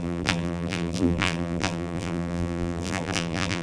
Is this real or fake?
fake